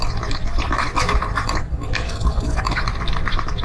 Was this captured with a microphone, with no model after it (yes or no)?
yes